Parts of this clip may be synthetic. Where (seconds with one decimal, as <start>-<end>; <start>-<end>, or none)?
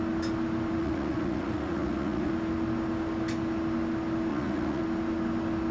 0.8-2.3; 4.3-4.8